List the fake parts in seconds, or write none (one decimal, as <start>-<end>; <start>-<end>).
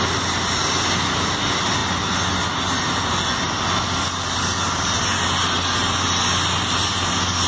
none